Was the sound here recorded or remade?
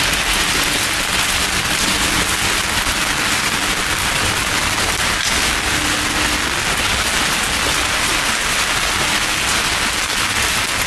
recorded